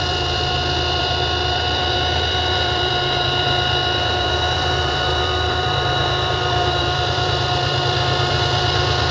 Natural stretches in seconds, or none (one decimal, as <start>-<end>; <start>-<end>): none